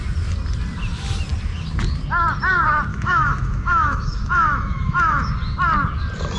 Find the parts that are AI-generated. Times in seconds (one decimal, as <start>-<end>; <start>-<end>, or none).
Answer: 2.9-5.3